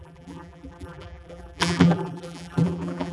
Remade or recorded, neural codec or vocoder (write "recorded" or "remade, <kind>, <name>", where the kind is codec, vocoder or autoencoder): remade, vocoder, BigVGAN v2